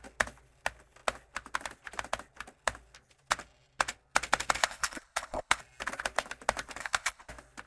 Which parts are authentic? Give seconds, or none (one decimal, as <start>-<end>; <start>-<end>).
0.0-4.6; 5.6-6.8; 7.3-7.7